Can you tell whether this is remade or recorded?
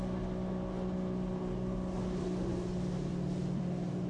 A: recorded